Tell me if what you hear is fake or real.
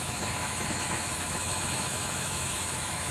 fake